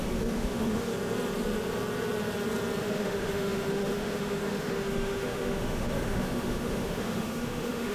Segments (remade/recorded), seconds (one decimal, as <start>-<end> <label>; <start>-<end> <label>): 0.0-0.9 remade; 0.9-2.8 recorded; 2.8-7.9 remade